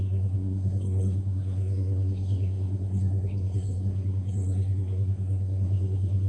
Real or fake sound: fake